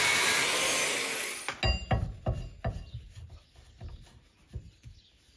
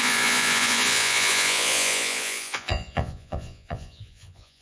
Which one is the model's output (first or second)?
second